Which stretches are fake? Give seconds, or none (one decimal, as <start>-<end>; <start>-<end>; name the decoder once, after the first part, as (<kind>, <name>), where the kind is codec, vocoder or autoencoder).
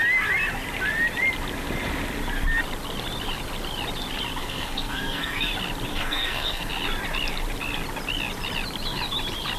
4.4-5.5 (codec, SNAC); 5.9-6.7